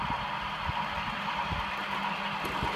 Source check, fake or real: real